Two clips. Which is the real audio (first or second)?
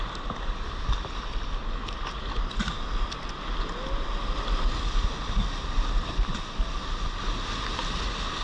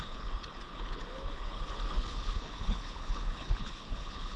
first